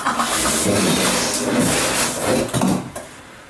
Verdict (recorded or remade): recorded